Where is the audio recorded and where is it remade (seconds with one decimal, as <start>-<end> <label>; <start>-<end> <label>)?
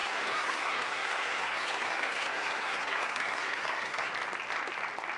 0.0-4.1 remade; 4.1-5.2 recorded